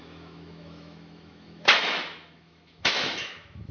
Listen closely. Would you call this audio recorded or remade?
remade